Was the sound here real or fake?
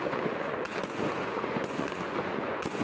fake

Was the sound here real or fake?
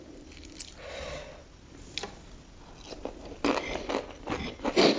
real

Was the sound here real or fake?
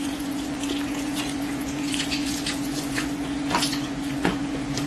fake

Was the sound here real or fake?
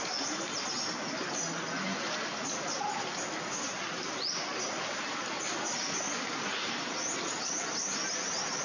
real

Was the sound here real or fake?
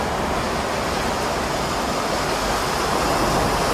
real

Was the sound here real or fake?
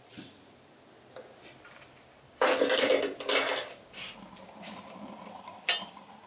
real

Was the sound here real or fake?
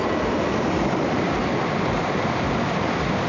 real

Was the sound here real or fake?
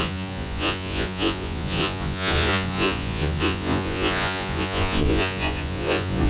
fake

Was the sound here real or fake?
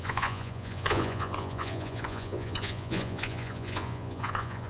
fake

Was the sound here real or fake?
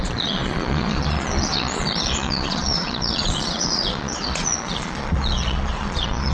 fake